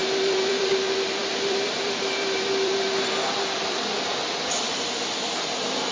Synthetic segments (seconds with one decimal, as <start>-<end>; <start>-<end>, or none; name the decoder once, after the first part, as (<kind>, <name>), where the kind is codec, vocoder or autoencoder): 0.0-0.7 (vocoder, BigVGAN v2); 1.2-4.7